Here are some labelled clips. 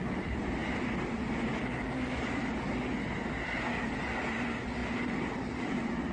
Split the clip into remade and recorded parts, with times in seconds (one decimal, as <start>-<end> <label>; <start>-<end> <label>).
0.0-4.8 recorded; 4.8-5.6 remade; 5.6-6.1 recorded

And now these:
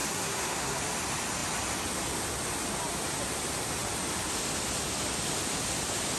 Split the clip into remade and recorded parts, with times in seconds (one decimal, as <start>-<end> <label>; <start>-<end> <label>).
0.0-0.8 remade; 0.8-6.2 recorded

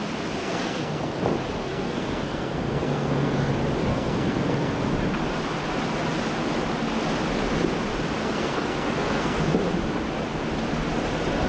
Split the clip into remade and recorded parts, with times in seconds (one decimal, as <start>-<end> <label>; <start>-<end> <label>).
0.0-0.4 recorded; 0.4-1.2 remade; 1.2-1.6 recorded; 1.6-3.5 remade; 3.5-3.9 recorded; 3.9-4.9 remade; 4.9-8.2 recorded; 8.2-9.4 remade; 9.4-11.5 recorded

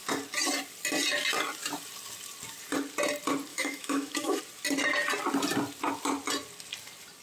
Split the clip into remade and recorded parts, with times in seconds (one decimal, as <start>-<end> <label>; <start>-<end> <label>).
0.0-3.5 recorded; 3.5-4.4 remade; 4.4-7.2 recorded